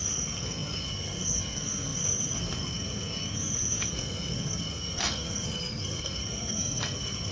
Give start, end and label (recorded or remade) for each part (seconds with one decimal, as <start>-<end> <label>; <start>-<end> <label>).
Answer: 0.0-7.3 remade